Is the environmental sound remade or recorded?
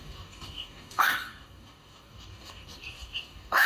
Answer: remade